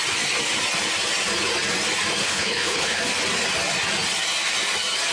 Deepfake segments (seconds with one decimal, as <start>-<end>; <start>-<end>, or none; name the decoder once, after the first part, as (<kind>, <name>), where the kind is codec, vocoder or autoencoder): 2.2-3.0 (codec, HILCodec)